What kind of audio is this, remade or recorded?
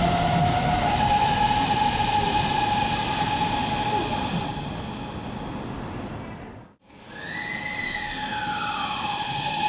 recorded